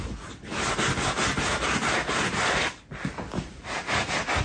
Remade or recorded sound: recorded